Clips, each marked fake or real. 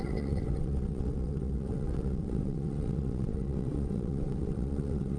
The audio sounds fake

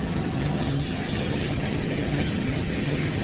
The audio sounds fake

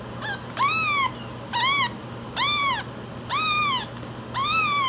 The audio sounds real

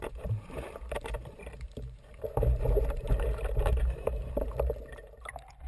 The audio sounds fake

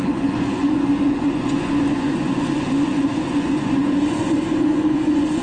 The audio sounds fake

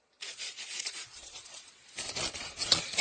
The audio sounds fake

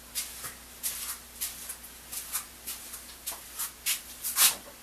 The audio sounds real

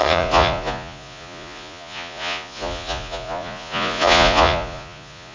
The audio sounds fake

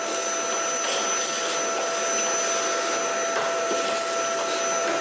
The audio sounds real